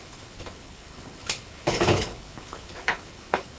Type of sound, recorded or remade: remade